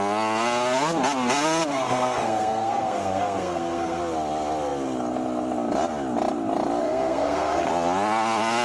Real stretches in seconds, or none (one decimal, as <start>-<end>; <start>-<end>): 0.0-1.7; 4.0-6.8; 7.7-8.6